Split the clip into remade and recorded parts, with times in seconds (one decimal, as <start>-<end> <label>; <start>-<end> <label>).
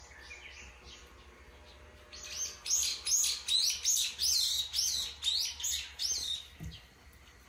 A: 0.0-7.5 recorded